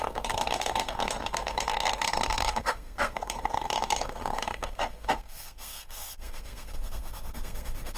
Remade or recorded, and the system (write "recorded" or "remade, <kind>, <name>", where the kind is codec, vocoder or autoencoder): remade, codec, SNAC